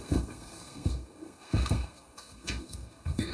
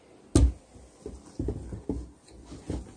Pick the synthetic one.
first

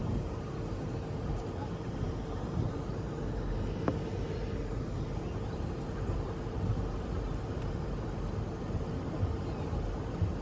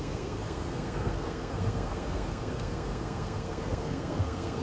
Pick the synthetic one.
second